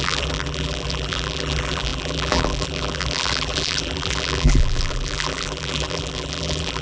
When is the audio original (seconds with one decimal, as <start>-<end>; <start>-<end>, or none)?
none